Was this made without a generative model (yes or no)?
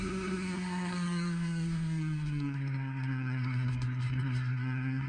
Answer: no